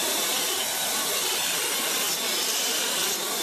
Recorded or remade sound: recorded